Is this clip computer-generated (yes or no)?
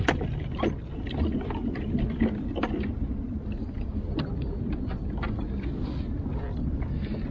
no